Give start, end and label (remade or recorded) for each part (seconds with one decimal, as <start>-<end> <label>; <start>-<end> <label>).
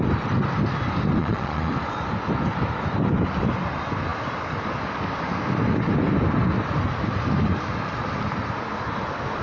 0.0-1.2 recorded; 1.2-1.7 remade; 1.7-9.4 recorded